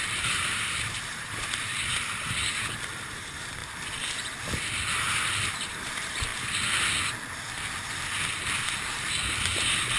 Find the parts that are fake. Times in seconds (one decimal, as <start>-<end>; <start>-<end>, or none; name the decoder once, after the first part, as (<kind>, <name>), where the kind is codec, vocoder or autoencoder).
0.0-3.6 (vocoder, BigVGAN v2); 4.9-6.3; 8.8-10.0

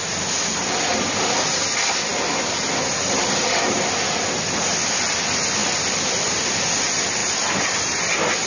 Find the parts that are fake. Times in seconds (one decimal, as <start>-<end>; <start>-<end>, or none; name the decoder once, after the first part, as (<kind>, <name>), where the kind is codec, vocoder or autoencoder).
2.1-2.6 (vocoder, BigVGAN v2); 5.6-6.7; 7.2-8.1

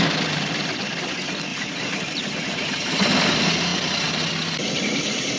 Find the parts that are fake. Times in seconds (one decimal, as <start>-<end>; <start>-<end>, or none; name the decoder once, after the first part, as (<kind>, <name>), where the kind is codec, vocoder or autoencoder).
1.5-3.1 (vocoder, BigVGAN v2)

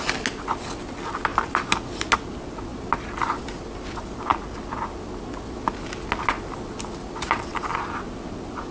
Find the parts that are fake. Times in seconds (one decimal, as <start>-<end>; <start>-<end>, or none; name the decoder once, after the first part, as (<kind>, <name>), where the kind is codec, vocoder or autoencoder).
1.3-2.0 (vocoder, BigVGAN v2)

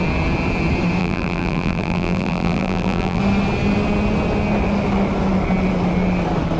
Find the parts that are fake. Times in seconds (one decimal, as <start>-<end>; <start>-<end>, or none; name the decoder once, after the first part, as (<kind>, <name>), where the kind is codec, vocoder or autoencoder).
1.0-3.2 (vocoder, BigVGAN v2)

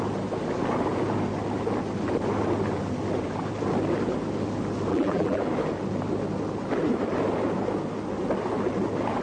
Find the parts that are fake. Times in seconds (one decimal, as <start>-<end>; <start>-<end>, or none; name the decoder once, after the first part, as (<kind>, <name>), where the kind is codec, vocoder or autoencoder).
4.9-5.4 (vocoder, BigVGAN v2)